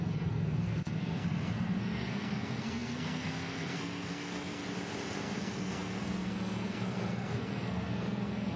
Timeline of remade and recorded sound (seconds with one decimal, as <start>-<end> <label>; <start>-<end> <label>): 0.0-4.6 remade; 4.6-5.1 recorded; 5.1-8.6 remade